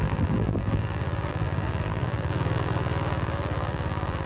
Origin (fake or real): fake